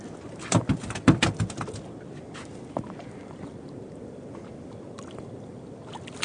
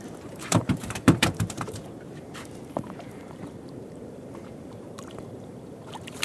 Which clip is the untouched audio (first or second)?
first